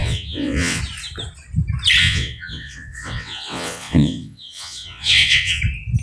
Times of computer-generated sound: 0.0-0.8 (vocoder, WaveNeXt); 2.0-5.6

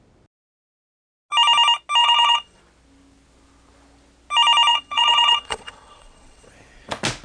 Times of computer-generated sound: 2.0-2.6 (vocoder, WaveNeXt); 4.7-6.5

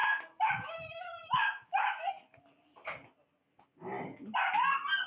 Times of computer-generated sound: 0.0-2.1 (autoencoder, DAC-VAE)

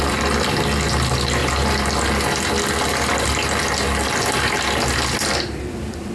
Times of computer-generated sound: none

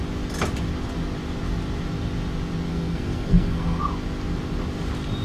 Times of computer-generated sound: 2.7-3.8 (codec, SNAC)